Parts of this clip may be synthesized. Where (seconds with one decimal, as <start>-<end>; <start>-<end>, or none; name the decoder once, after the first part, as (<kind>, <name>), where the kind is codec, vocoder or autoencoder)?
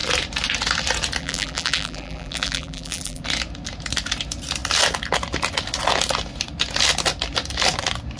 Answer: 1.2-3.2 (vocoder, BigVGAN v2)